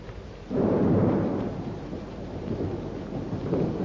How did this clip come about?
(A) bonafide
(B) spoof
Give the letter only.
B